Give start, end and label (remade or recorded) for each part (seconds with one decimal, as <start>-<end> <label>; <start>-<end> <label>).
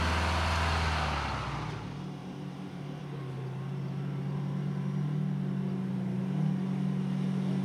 0.0-2.2 recorded; 2.2-3.0 remade; 3.0-7.6 recorded